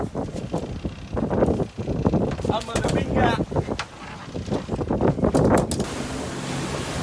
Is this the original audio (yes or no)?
yes